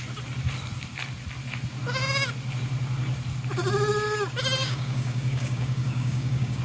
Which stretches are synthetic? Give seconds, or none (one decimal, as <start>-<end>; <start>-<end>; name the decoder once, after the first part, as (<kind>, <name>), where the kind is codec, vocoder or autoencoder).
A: 4.6-6.6 (codec, DAC)